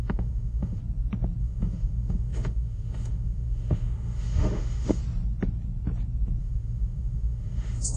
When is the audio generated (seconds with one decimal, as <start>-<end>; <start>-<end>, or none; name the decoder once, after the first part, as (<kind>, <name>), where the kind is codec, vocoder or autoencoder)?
0.0-0.8 (autoencoder, DAC-VAE); 1.4-5.0; 6.4-8.0